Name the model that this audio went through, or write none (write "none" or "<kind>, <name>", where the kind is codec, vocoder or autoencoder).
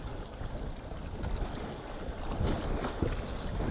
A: none